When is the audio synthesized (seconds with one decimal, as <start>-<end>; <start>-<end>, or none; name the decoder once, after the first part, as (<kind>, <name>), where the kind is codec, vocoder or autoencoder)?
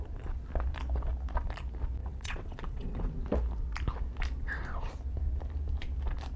2.0-3.1 (vocoder, WaveNeXt)